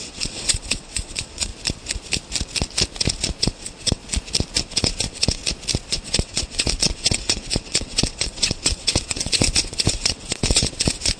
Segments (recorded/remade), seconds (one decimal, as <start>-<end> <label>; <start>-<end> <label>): 0.0-1.5 remade; 1.5-3.4 recorded; 3.4-4.0 remade; 4.0-4.6 recorded; 4.6-5.4 remade; 5.4-5.9 recorded; 5.9-11.2 remade